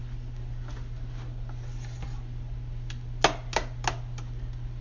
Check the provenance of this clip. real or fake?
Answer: real